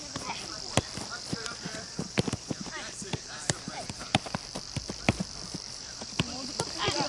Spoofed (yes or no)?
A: yes